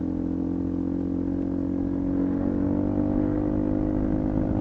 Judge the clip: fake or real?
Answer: real